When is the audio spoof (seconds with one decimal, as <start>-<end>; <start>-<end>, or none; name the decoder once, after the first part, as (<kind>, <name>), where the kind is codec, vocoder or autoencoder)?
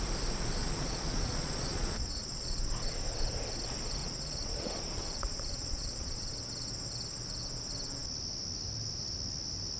0.6-2.6 (vocoder, Vocos); 4.0-6.3